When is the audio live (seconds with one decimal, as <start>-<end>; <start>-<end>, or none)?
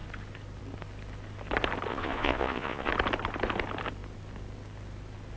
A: 0.0-1.9; 2.9-5.4